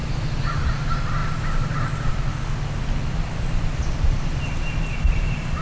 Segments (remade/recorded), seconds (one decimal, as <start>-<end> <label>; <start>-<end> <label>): 0.0-5.6 recorded